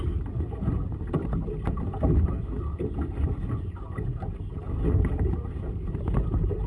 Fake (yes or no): no